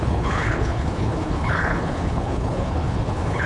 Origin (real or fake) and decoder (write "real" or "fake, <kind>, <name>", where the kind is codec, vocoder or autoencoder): fake, codec, HILCodec